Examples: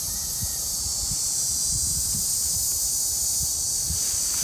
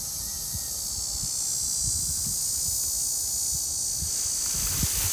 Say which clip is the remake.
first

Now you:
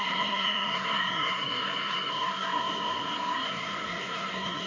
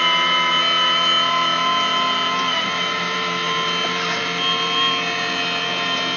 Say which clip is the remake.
first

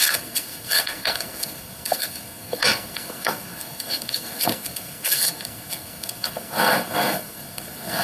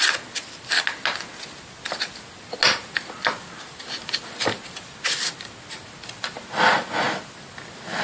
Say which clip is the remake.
first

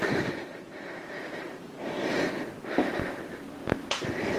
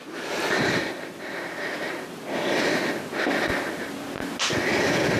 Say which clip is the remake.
first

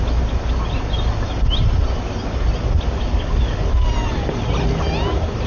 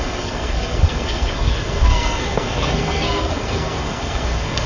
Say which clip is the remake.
second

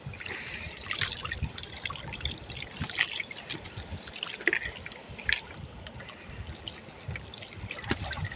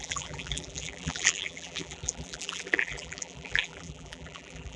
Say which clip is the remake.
second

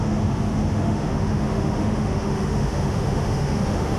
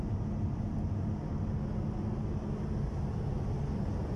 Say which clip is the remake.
first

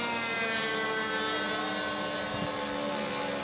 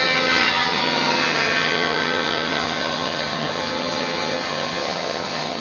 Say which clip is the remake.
second